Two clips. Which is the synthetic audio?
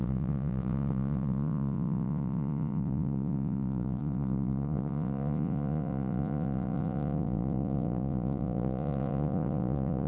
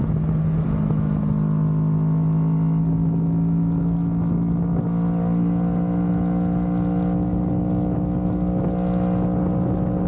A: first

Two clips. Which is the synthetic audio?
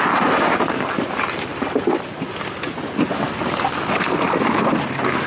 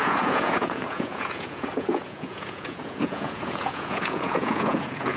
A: second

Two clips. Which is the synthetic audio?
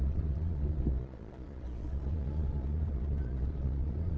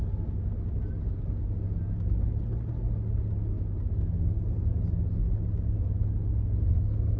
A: first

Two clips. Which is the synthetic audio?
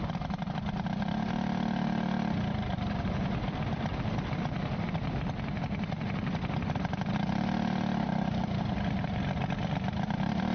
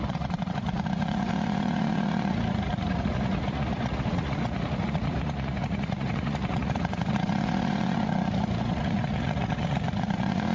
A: second